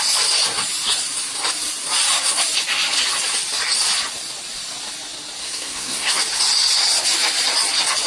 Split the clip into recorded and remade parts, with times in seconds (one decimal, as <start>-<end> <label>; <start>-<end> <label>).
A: 0.0-5.4 recorded; 5.4-6.2 remade; 6.2-8.1 recorded